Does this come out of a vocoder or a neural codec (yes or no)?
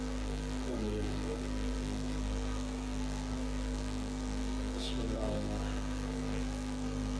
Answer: yes